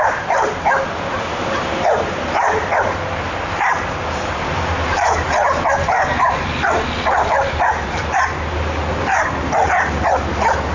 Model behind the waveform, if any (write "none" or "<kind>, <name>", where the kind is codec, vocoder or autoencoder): none